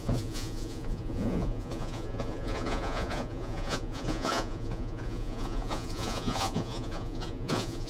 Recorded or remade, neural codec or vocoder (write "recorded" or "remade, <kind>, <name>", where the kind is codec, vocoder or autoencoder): remade, vocoder, Vocos